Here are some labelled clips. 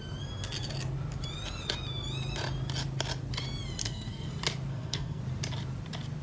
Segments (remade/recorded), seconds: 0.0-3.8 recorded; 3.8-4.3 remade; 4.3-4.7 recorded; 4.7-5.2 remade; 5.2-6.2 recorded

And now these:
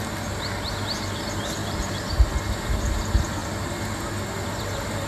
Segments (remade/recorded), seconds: 0.0-1.6 recorded; 1.6-2.1 remade; 2.1-3.4 recorded; 3.4-4.1 remade; 4.1-5.1 recorded

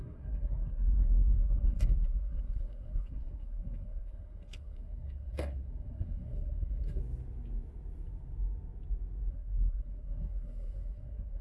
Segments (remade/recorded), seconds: 0.0-7.0 remade; 7.0-9.3 recorded; 9.3-11.4 remade

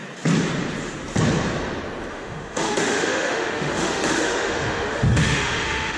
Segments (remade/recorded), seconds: 0.0-2.1 recorded; 2.1-6.0 remade